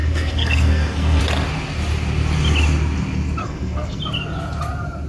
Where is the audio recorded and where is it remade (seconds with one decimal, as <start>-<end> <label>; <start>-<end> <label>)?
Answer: 0.0-1.2 remade; 1.2-3.4 recorded; 3.4-4.0 remade; 4.0-5.1 recorded